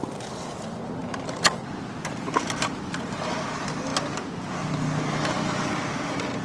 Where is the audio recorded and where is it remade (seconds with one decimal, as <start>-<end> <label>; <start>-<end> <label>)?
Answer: 0.0-1.0 recorded; 1.0-3.2 remade; 3.2-6.4 recorded